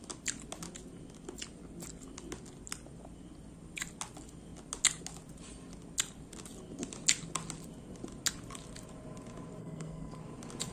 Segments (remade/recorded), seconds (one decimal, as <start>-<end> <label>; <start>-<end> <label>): 0.0-9.6 recorded; 9.6-10.2 remade; 10.2-10.7 recorded